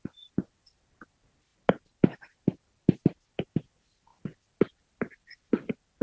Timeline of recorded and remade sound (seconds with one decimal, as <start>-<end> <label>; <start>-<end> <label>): 0.0-6.0 recorded